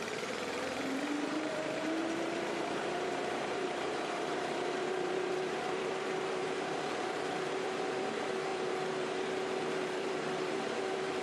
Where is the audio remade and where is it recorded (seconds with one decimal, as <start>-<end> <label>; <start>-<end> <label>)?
0.0-11.2 remade